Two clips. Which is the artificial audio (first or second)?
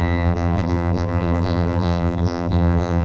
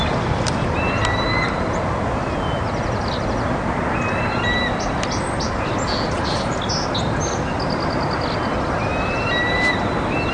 first